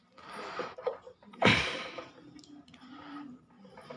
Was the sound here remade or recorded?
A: remade